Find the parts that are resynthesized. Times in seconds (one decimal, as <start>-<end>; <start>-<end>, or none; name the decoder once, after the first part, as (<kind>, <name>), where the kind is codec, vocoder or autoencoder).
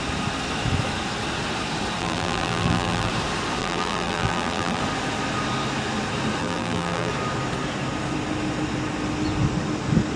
2.0-3.1 (vocoder, BigVGAN v2); 3.6-4.8; 6.4-7.1